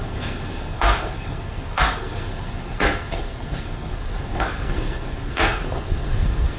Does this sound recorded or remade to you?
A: remade